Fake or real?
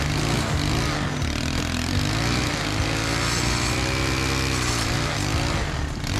real